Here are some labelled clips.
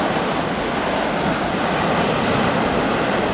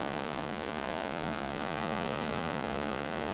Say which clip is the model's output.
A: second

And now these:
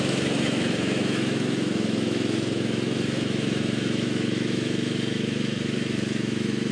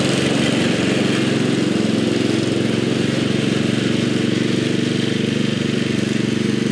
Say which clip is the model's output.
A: first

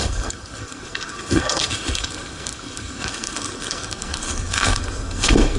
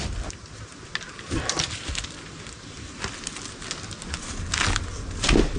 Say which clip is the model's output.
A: first